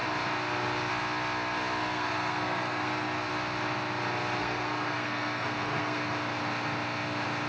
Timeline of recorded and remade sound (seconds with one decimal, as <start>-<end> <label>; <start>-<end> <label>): 0.0-1.8 recorded; 1.8-3.3 remade; 3.3-4.4 recorded; 4.4-6.0 remade; 6.0-7.5 recorded